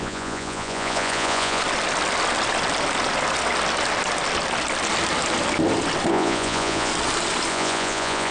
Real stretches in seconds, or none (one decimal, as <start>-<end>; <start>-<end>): 1.6-6.1; 6.9-7.5